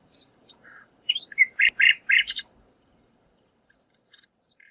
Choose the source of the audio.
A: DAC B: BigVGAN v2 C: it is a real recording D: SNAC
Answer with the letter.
B